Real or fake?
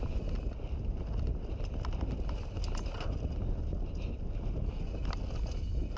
real